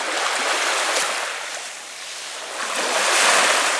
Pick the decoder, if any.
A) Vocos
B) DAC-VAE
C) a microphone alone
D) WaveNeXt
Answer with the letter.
C